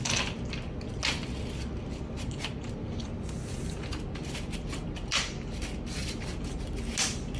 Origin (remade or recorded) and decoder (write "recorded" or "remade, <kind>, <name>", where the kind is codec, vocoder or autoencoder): recorded